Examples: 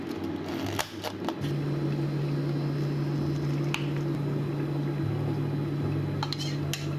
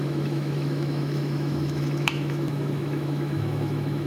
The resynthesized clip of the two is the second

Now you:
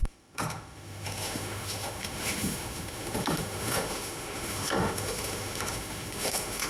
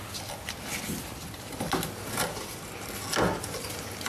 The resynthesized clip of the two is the first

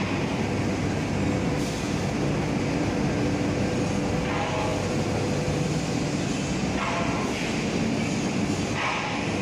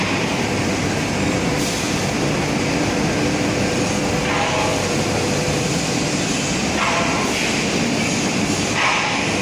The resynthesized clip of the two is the second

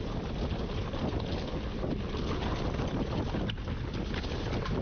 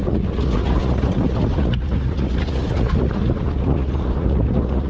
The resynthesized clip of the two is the second